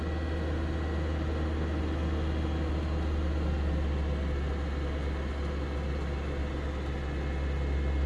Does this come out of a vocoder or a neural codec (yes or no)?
no